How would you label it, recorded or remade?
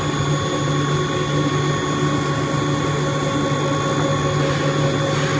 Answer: recorded